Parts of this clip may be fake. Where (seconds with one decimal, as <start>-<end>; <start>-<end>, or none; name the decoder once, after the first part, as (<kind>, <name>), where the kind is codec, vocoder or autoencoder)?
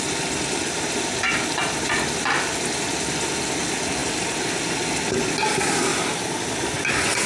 4.0-4.7 (vocoder, BigVGAN v2); 5.9-6.4